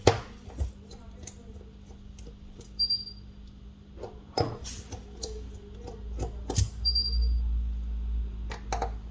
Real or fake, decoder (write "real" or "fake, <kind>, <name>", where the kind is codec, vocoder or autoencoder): real